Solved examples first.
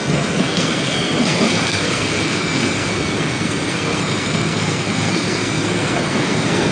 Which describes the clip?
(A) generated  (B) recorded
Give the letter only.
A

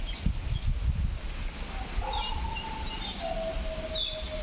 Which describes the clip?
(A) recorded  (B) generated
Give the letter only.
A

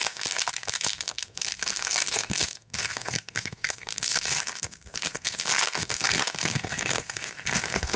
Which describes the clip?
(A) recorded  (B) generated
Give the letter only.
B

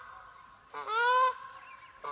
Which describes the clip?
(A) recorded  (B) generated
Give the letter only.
A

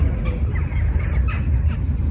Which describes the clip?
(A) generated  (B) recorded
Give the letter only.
B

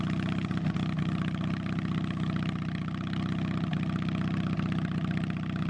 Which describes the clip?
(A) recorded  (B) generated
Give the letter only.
A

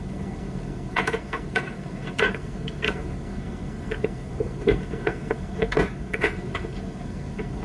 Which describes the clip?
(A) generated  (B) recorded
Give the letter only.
A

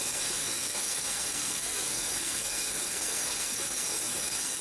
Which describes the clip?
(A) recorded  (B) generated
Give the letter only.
B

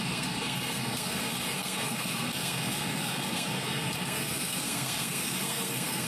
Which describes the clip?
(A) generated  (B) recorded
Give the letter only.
A